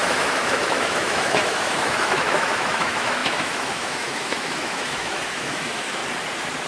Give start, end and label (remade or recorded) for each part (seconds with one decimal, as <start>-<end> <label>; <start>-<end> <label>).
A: 0.0-6.0 remade; 6.0-6.7 recorded